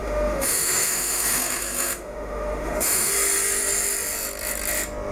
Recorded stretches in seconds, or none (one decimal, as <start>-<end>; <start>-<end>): 3.1-5.1